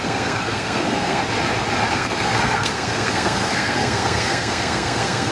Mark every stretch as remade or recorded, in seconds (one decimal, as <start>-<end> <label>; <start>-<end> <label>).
0.0-1.2 remade; 1.2-1.9 recorded; 1.9-5.3 remade